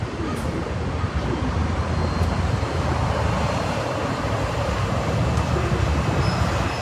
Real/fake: real